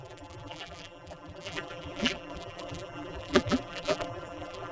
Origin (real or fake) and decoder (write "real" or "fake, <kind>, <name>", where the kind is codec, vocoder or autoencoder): fake, vocoder, BigVGAN v2